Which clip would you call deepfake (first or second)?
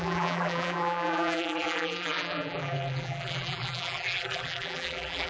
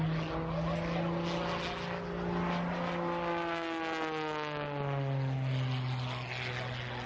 first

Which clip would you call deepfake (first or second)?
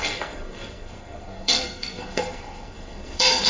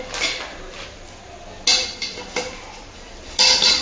first